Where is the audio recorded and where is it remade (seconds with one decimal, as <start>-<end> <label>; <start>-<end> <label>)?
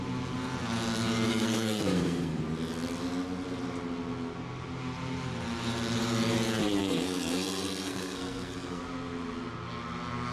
0.0-1.3 recorded; 1.3-2.4 remade; 2.4-6.8 recorded; 6.8-8.8 remade; 8.8-10.3 recorded